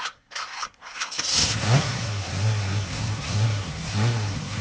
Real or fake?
fake